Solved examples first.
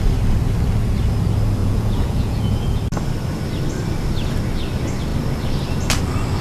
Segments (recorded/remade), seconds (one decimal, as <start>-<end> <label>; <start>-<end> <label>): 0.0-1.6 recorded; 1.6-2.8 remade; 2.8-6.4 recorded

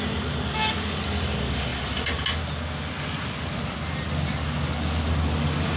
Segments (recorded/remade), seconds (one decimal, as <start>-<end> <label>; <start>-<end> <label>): 0.0-5.8 recorded

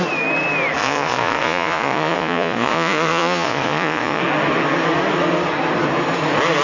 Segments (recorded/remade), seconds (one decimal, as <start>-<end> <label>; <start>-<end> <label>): 0.0-0.8 recorded; 0.8-4.2 remade; 4.2-6.6 recorded